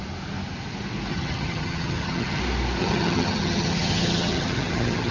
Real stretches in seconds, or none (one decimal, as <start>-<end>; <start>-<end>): 0.0-1.1; 2.4-2.8